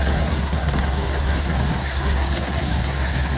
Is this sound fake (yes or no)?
yes